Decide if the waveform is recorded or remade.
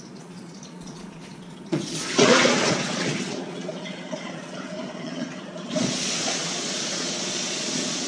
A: remade